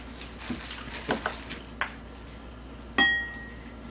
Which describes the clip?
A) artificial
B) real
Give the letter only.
B